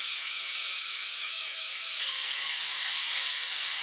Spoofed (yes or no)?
yes